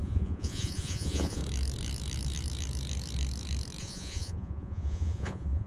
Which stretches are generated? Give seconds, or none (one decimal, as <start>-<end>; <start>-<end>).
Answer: 0.0-1.4; 3.8-5.7